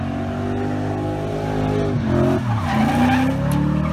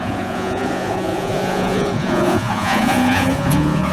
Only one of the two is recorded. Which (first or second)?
first